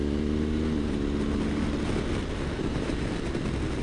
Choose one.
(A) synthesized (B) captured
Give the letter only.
B